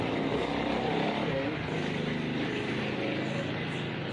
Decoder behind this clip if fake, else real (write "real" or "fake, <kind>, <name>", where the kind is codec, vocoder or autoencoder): real